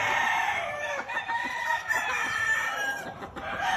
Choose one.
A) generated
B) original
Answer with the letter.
A